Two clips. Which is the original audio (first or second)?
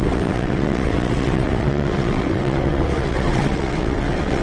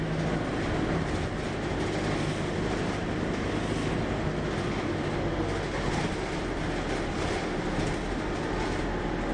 second